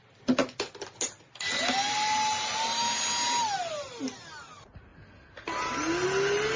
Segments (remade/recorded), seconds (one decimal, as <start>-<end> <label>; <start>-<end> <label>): 0.0-6.6 recorded